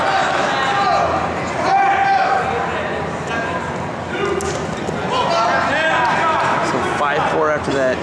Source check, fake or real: real